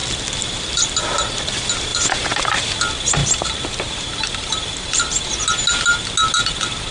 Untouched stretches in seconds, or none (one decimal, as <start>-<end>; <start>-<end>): 0.0-1.9; 2.8-3.2; 5.3-6.9